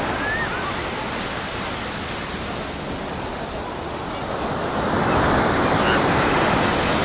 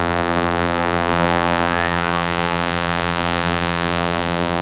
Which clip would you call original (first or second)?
first